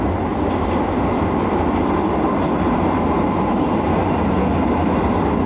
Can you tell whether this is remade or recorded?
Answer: recorded